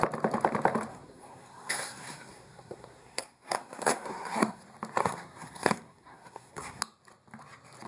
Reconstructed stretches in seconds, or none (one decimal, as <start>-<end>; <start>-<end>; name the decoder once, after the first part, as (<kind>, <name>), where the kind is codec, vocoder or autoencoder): 0.9-4.6 (codec, SNAC); 5.0-6.8